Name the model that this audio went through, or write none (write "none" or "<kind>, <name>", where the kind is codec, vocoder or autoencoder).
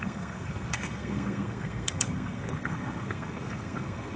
codec, SNAC